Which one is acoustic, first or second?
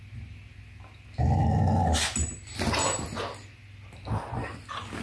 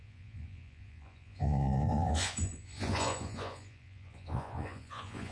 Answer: first